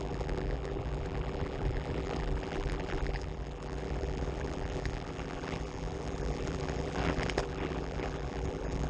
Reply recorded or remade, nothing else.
remade